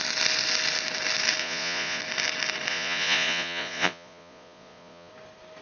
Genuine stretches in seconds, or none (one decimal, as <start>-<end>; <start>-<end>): 0.0-1.4; 2.0-2.7; 5.1-5.6